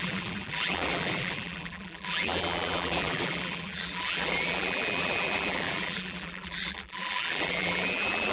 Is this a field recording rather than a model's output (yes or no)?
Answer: no